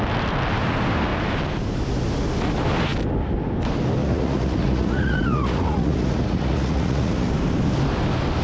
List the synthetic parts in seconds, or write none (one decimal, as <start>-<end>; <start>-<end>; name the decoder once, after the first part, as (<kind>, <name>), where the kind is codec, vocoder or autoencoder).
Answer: 4.0-7.3 (vocoder, Vocos)